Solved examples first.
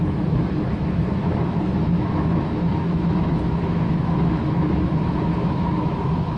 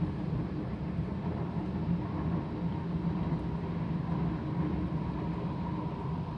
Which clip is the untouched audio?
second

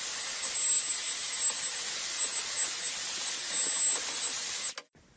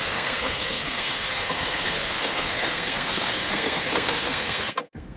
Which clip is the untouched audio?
first